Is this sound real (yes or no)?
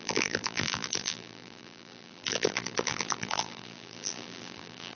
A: no